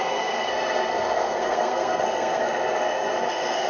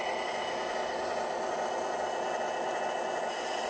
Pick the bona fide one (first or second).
second